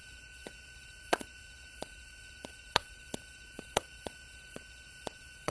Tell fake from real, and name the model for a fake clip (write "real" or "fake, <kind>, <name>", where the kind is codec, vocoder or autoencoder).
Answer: fake, vocoder, Vocos